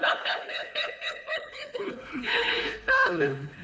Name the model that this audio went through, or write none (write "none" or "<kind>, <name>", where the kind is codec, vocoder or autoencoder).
codec, HILCodec